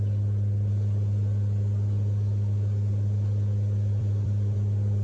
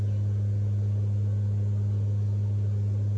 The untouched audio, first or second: second